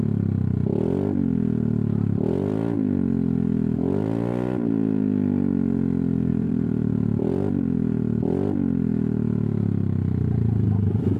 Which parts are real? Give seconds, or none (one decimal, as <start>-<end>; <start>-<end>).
0.0-6.3; 7.2-11.2